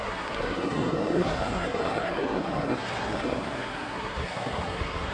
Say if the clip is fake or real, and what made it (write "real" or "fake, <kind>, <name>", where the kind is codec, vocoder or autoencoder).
fake, codec, SNAC